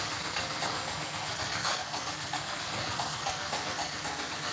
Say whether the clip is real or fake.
fake